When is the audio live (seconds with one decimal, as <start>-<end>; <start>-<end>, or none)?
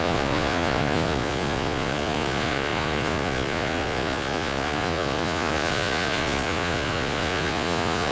none